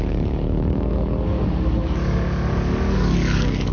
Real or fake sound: fake